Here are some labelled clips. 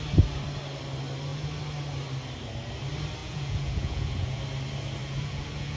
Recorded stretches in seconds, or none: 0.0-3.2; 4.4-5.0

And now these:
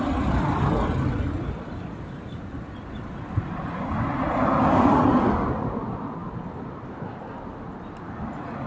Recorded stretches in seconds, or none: 0.0-8.7

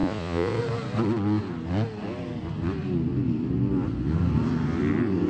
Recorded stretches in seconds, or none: 0.6-5.3

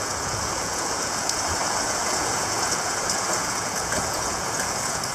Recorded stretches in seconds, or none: none

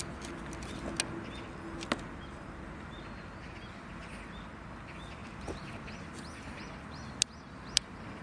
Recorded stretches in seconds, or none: 0.0-8.2

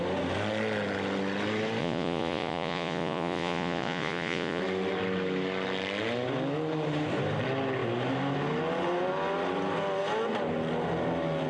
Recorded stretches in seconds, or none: 0.0-1.8; 4.6-11.5

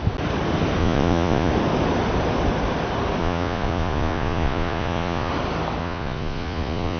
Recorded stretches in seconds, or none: 0.0-0.8; 1.5-3.2; 5.3-5.8

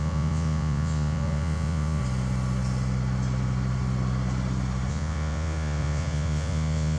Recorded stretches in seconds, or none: 2.0-4.9